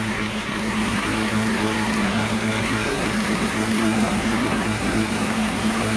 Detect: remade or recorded remade